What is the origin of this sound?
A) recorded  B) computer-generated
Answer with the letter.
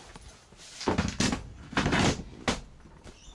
A